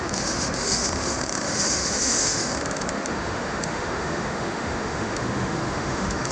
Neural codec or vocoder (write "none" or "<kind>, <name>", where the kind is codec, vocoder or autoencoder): autoencoder, DAC-VAE